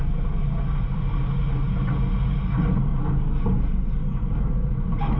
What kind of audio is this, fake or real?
real